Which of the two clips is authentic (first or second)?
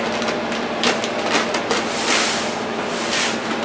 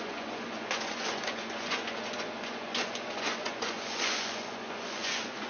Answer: first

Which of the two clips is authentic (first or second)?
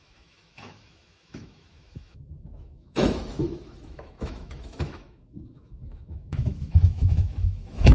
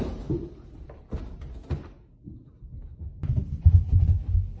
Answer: second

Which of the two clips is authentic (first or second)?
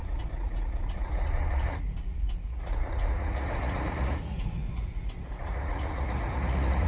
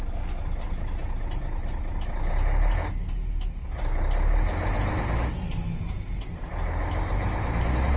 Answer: second